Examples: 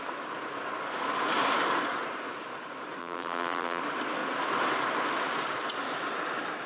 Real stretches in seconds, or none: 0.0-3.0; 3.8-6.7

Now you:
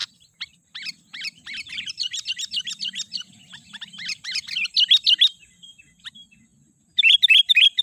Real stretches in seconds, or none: 2.3-3.4; 4.7-6.5

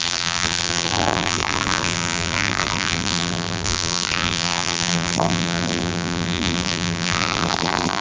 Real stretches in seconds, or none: none

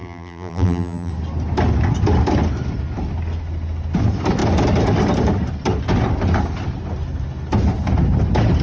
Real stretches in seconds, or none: 1.1-8.6

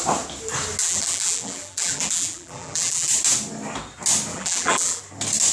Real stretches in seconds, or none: 0.0-0.8; 3.1-4.3; 5.0-5.5